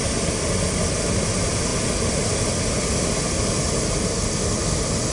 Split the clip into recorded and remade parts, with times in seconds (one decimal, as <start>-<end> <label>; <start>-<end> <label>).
0.0-5.1 recorded